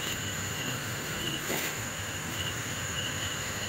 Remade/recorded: remade